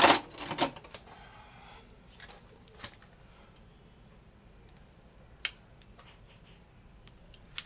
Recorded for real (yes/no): yes